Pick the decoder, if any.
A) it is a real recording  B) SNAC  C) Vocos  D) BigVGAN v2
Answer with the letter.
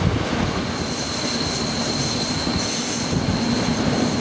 A